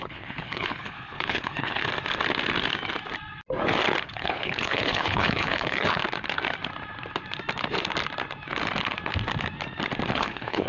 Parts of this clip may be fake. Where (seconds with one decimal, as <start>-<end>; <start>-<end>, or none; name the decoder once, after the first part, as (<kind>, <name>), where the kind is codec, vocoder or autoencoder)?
0.0-1.8 (codec, HILCodec); 4.0-6.0; 10.1-10.7